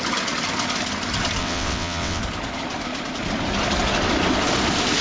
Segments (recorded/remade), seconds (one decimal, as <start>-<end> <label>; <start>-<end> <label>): 0.0-1.4 recorded; 1.4-2.2 remade; 2.2-5.0 recorded